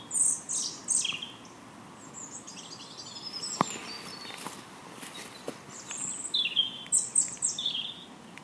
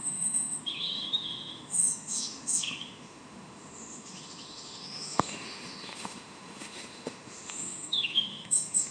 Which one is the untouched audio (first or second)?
first